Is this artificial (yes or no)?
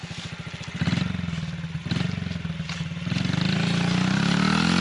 no